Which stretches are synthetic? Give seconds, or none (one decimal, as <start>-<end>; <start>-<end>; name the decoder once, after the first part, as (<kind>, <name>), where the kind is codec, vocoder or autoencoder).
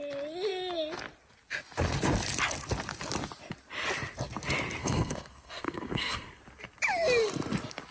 4.8-6.4 (codec, SNAC)